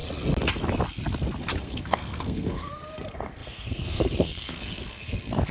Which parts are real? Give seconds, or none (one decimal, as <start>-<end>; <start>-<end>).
0.0-1.6